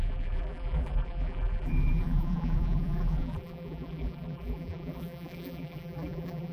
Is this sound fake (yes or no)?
yes